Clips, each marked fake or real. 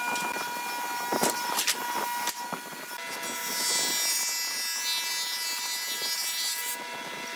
real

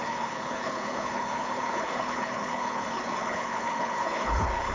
fake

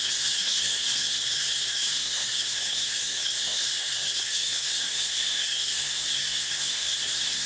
fake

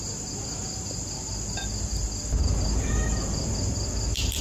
real